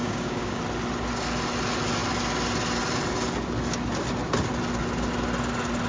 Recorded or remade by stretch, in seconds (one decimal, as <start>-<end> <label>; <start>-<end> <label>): 0.0-0.6 remade; 0.6-5.9 recorded